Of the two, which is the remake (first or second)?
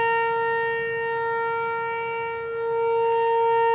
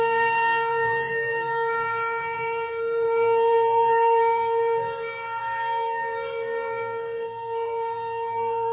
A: second